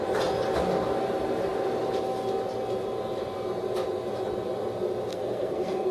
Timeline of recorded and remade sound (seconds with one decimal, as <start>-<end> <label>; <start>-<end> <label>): 0.0-5.1 recorded; 5.1-5.9 remade